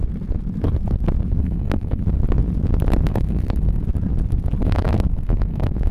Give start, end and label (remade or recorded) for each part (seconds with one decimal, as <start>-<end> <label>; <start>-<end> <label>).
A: 0.0-1.4 recorded; 1.4-2.0 remade; 2.0-3.1 recorded; 3.1-3.8 remade; 3.8-4.6 recorded; 4.6-5.9 remade